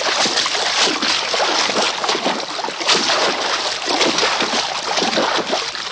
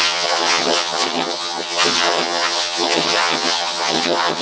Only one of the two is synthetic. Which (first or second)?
second